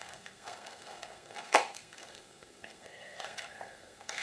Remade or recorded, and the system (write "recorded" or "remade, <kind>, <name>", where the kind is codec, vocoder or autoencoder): remade, codec, SNAC